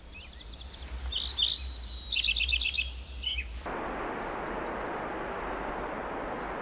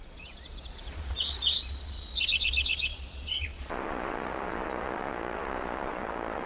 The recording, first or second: first